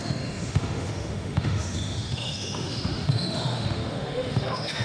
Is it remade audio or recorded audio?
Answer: remade